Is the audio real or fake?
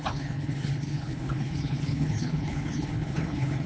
fake